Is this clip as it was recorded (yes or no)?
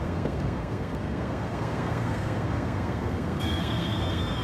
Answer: no